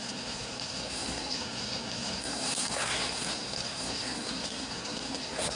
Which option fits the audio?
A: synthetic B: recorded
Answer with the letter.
A